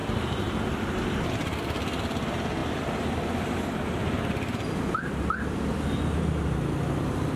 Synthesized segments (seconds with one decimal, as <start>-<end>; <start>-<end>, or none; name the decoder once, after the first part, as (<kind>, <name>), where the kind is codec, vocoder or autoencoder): none